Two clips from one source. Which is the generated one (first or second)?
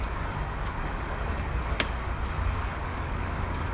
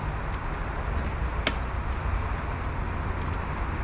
first